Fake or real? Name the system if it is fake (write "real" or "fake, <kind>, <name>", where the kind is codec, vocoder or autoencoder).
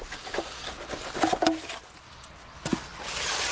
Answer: real